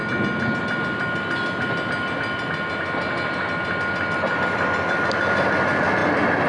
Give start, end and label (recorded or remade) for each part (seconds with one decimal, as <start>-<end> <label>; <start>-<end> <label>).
0.0-6.5 recorded

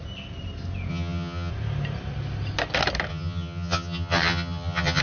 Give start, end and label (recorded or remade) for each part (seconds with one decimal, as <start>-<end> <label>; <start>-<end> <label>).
0.0-0.9 recorded; 0.9-1.5 remade; 1.5-3.1 recorded; 3.1-5.0 remade

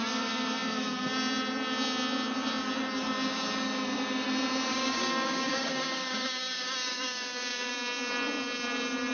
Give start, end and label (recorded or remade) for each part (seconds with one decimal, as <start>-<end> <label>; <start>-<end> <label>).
0.0-4.7 recorded; 4.7-7.7 remade; 7.7-9.1 recorded

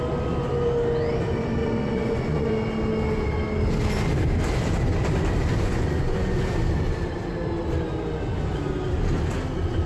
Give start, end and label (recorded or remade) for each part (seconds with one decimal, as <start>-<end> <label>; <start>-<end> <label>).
0.0-1.6 recorded; 1.6-2.5 remade; 2.5-5.5 recorded; 5.5-6.4 remade; 6.4-9.9 recorded

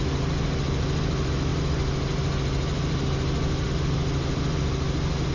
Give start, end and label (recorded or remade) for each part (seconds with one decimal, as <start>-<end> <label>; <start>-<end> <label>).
0.0-5.3 recorded

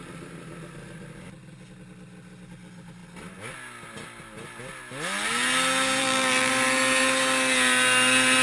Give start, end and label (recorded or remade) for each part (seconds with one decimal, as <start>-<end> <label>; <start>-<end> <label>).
0.0-6.0 recorded; 6.0-6.5 remade; 6.5-8.4 recorded